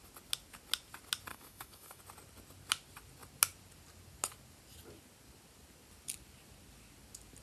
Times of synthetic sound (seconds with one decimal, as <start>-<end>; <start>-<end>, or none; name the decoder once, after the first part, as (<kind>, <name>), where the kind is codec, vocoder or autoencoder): 1.3-2.0 (autoencoder, DAC-VAE)

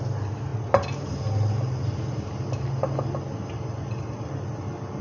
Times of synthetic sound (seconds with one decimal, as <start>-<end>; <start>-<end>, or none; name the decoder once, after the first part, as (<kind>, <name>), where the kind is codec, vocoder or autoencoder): none

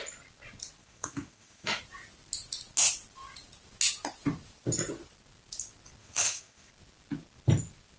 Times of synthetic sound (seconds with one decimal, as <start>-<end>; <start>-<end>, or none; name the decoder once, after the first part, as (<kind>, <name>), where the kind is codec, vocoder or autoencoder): 0.8-1.8 (autoencoder, DAC-VAE); 6.0-6.7

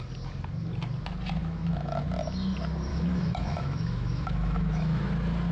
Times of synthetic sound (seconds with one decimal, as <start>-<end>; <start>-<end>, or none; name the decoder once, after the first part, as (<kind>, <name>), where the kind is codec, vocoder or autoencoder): 1.4-2.0 (autoencoder, DAC-VAE); 2.9-5.0

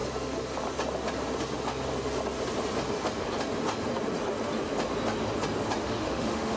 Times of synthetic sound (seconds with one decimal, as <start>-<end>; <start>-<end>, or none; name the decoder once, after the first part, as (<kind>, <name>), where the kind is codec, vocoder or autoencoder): 5.8-6.6 (autoencoder, DAC-VAE)

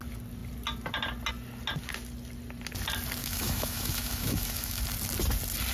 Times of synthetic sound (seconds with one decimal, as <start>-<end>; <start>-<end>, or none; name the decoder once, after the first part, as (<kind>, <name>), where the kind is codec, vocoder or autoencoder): 3.2-4.8 (autoencoder, DAC-VAE)